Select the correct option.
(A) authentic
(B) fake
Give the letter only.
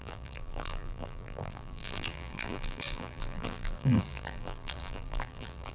B